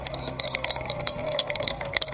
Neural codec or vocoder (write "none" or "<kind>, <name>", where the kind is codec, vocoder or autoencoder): codec, SNAC